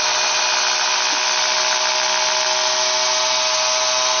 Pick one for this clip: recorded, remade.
recorded